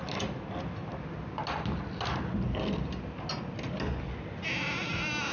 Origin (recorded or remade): recorded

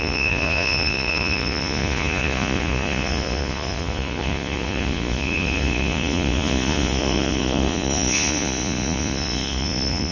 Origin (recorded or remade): remade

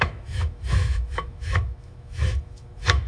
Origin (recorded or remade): remade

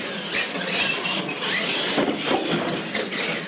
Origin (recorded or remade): recorded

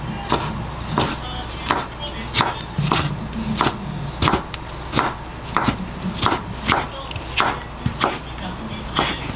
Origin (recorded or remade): recorded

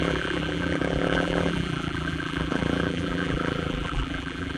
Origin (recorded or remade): remade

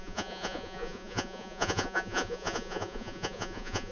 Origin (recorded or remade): remade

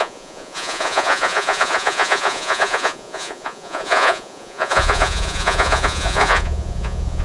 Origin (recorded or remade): remade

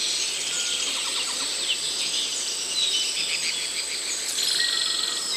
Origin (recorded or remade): recorded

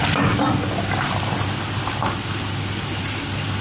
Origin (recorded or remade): remade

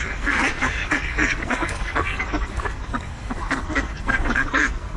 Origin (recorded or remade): remade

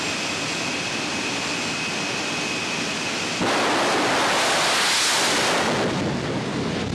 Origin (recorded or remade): recorded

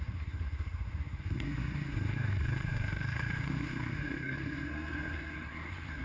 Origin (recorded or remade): remade